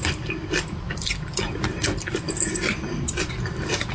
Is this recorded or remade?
recorded